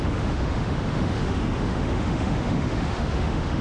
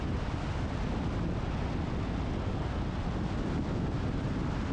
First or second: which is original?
second